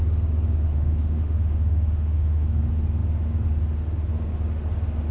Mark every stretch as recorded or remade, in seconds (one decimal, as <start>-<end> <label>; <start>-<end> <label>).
0.0-0.7 recorded; 0.7-2.6 remade; 2.6-5.1 recorded